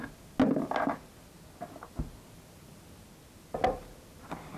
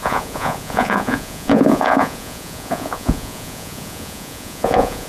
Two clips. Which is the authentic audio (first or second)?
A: first